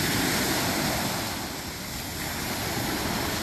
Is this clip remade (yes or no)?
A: no